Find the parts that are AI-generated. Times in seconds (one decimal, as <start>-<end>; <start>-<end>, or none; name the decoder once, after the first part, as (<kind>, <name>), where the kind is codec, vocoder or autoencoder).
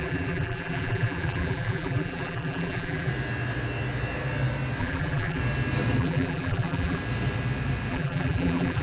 0.0-3.1 (vocoder, BigVGAN v2); 4.8-5.4; 6.0-7.0; 7.9-8.8